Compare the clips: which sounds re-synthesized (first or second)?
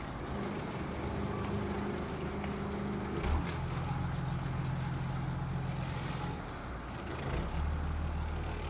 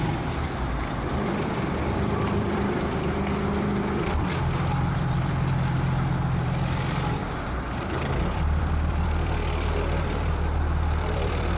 second